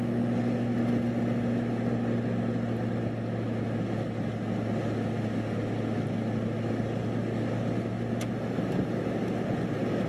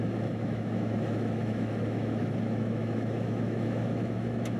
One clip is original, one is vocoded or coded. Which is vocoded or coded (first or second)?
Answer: second